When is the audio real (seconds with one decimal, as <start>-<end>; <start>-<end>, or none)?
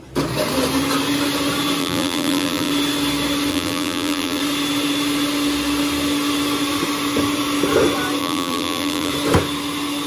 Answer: 0.0-1.8; 2.7-3.5; 4.4-8.2; 9.1-10.1